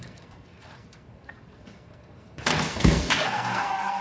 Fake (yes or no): yes